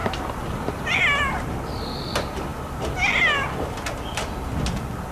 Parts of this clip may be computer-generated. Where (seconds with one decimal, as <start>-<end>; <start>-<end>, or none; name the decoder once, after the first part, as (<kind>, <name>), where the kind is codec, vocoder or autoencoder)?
0.0-1.0 (vocoder, BigVGAN v2)